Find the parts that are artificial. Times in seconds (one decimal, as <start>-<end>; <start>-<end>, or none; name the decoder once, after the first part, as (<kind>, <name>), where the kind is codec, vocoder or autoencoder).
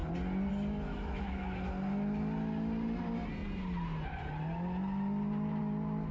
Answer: 0.9-1.6 (autoencoder, DAC-VAE)